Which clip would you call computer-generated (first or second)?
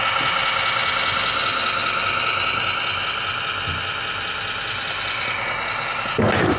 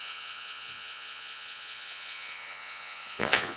second